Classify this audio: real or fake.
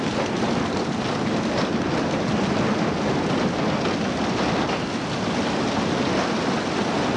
real